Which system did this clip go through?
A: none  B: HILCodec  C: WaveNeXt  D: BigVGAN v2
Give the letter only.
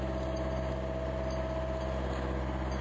A